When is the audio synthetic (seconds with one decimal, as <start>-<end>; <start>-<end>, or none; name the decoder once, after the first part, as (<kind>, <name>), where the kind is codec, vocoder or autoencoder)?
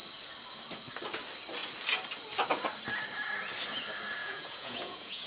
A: 4.2-5.3 (vocoder, Vocos)